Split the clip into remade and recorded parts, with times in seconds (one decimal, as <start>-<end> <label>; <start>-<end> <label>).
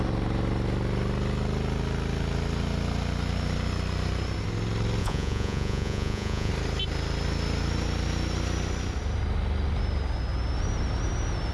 0.0-5.0 recorded; 5.0-6.5 remade; 6.5-11.5 recorded